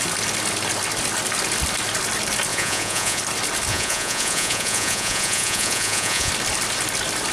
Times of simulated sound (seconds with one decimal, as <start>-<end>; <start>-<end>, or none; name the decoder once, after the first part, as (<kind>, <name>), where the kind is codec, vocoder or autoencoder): 2.5-3.2 (vocoder, Vocos); 3.7-6.3